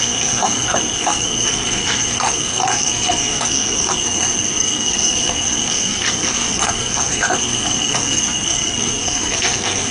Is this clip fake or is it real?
fake